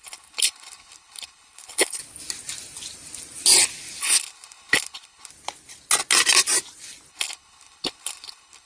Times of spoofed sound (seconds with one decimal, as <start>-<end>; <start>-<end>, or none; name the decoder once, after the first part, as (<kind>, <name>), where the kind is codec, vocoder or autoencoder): 0.0-2.0 (codec, HILCodec); 4.0-5.3; 7.1-8.7